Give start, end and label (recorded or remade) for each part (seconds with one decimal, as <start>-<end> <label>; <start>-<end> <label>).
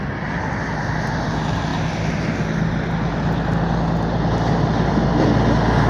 0.0-5.9 recorded